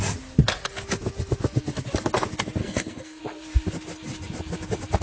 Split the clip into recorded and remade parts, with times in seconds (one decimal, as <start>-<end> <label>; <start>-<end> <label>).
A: 0.0-2.6 recorded; 2.6-3.2 remade; 3.2-5.0 recorded